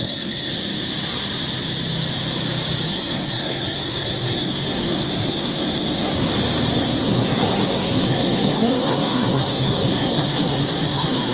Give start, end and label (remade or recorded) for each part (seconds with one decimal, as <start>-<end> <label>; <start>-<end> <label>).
0.0-0.5 remade; 0.5-2.9 recorded; 2.9-6.3 remade; 6.3-6.8 recorded; 6.8-11.3 remade

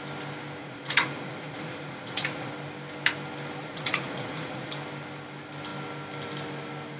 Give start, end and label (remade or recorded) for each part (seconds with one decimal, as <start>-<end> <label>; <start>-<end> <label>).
0.0-0.6 recorded; 0.6-2.5 remade; 2.5-3.6 recorded; 3.6-4.7 remade; 4.7-7.0 recorded